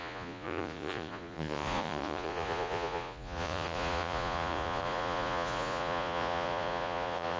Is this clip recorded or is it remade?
remade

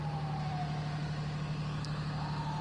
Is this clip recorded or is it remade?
recorded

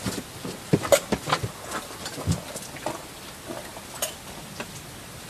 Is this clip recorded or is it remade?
recorded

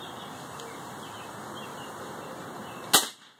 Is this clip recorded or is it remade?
recorded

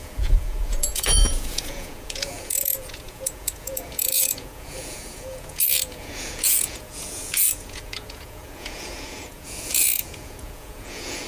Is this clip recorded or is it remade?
remade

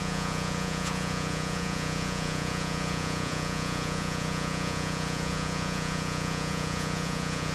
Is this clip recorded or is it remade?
remade